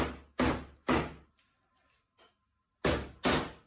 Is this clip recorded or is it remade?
recorded